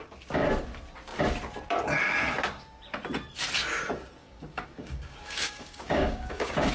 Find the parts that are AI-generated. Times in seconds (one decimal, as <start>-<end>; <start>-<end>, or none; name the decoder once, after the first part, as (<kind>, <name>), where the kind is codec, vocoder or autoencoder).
4.2-6.7 (codec, DAC)